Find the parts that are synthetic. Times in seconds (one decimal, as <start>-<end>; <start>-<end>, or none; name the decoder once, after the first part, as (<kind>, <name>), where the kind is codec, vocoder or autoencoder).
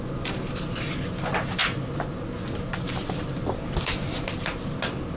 none